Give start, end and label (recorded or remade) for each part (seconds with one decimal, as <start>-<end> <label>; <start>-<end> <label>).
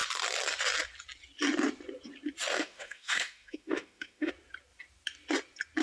0.0-2.5 recorded; 2.5-4.3 remade; 4.3-5.8 recorded